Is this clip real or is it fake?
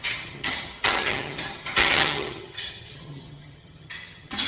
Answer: fake